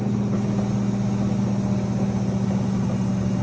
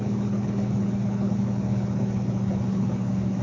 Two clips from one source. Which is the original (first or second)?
first